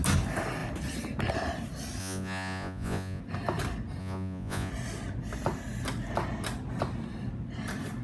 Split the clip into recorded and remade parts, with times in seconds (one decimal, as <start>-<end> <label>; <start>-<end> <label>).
0.0-2.0 recorded; 2.0-3.2 remade; 3.2-4.0 recorded; 4.0-4.7 remade; 4.7-8.0 recorded